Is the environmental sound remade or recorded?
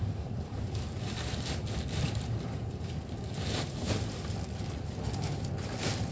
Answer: recorded